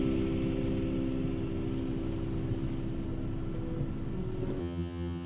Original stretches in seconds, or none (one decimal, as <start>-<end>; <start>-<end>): 0.0-4.6